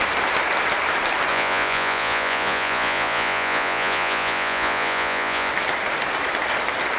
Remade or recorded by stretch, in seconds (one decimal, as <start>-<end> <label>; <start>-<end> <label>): 0.0-1.3 recorded; 1.3-5.5 remade; 5.5-7.0 recorded